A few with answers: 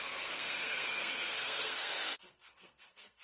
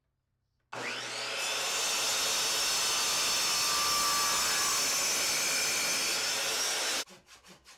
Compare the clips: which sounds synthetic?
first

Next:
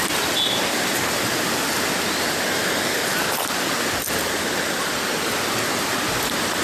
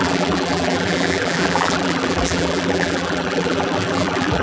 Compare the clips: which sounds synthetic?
second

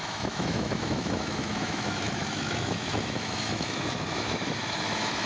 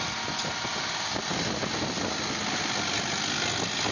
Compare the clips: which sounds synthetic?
first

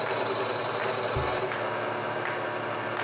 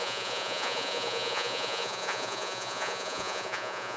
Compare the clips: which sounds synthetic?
second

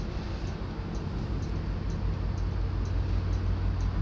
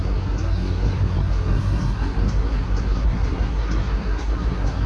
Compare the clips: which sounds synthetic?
second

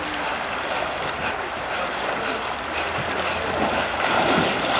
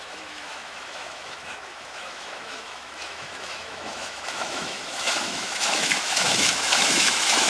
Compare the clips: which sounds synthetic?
second